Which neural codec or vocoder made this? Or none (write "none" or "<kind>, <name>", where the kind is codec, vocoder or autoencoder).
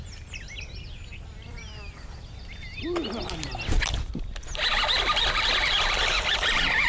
none